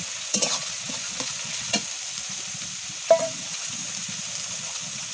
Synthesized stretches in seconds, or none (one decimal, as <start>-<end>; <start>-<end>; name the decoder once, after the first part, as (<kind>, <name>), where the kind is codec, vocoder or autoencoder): 0.0-1.8 (vocoder, WaveNeXt); 3.2-3.8; 4.5-5.1